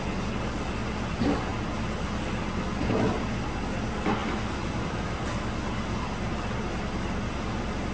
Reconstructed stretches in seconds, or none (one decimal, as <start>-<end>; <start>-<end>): 4.2-5.4